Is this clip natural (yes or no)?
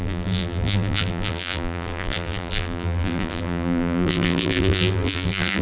no